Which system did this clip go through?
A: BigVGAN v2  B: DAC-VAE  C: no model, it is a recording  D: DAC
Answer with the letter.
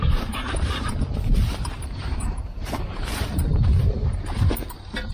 A